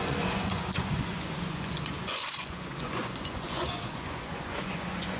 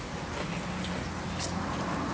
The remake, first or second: first